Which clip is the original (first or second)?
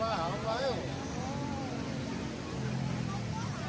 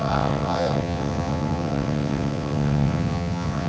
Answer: first